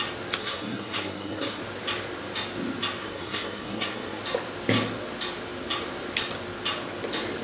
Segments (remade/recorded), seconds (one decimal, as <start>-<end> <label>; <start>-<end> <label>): 0.0-0.4 recorded; 0.4-1.6 remade; 1.6-3.0 recorded; 3.0-4.2 remade; 4.2-7.4 recorded